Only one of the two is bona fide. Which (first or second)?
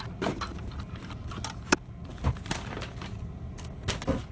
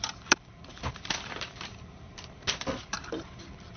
first